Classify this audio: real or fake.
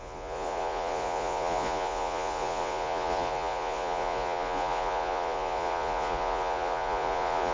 fake